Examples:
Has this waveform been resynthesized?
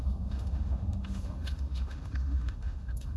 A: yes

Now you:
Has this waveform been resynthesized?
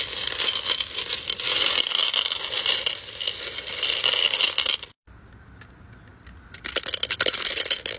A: no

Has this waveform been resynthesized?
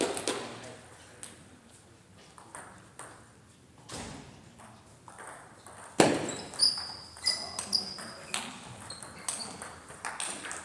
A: no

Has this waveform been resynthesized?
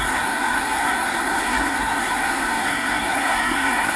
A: yes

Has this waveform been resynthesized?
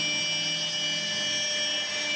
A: no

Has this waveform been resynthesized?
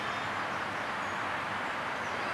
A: no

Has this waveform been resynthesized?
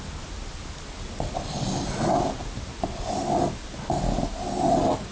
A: no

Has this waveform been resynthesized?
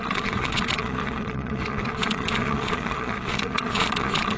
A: yes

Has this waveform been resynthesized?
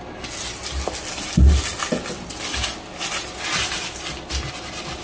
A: no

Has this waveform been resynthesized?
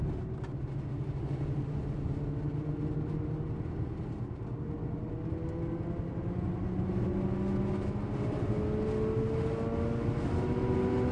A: no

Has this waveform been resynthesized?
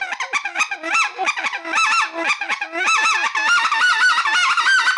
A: no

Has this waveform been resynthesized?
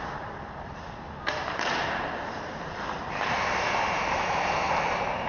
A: yes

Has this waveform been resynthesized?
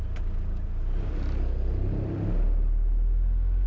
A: no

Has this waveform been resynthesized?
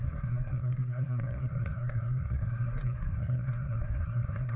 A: yes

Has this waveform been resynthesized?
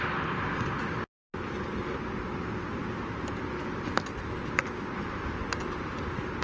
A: no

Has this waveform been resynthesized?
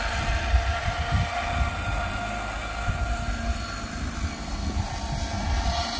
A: no